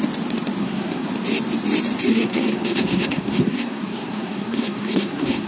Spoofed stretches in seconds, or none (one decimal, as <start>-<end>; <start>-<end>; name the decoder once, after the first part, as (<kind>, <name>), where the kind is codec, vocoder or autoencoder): 0.6-1.1 (codec, SNAC); 2.1-5.5